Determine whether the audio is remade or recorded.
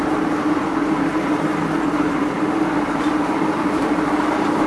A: remade